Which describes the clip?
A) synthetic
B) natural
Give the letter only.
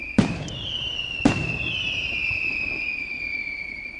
A